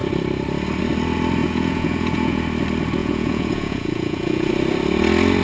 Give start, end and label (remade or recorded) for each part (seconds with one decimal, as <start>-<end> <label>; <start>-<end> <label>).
0.0-1.4 recorded; 1.4-2.4 remade; 2.4-3.0 recorded; 3.0-4.5 remade; 4.5-5.4 recorded